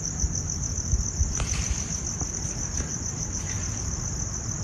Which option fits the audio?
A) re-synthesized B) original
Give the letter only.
B